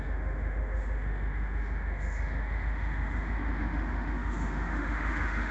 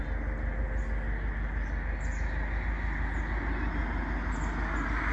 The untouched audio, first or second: second